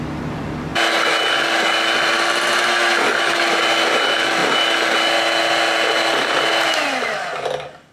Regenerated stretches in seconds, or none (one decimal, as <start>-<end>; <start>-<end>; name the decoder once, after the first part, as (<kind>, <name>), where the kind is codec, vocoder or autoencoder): none